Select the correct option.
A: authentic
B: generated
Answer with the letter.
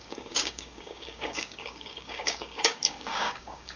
B